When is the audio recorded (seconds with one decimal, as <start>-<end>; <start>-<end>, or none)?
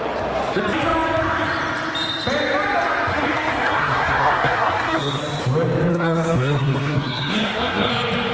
0.0-3.1; 5.2-5.9; 7.9-8.3